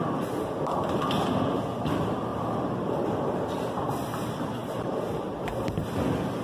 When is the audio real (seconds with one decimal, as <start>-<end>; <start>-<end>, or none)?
0.0-2.3; 3.7-4.6; 5.8-6.4